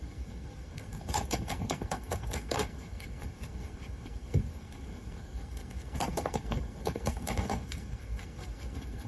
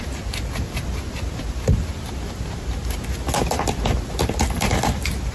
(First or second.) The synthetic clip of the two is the first